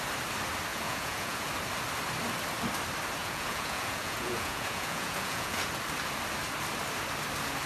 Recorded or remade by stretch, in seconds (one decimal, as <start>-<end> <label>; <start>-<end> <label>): 0.0-0.7 recorded; 0.7-1.5 remade; 1.5-3.2 recorded; 3.2-5.7 remade; 5.7-7.7 recorded